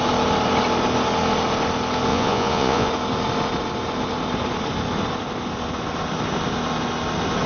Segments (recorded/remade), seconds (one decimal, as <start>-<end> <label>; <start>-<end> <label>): 0.0-2.1 recorded; 2.1-2.9 remade; 2.9-7.5 recorded